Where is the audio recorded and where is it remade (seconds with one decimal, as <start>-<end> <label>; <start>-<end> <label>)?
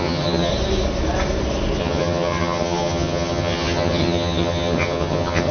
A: 0.0-0.5 remade; 0.5-1.8 recorded; 1.8-5.5 remade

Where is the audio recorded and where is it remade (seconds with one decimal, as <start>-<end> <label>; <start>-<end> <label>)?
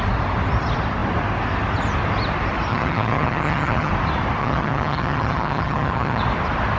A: 0.0-2.7 recorded; 2.7-3.9 remade; 3.9-4.4 recorded; 4.4-6.2 remade; 6.2-6.8 recorded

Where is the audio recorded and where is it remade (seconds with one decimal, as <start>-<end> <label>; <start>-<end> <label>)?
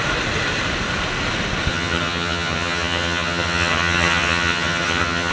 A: 0.0-1.7 recorded; 1.7-5.3 remade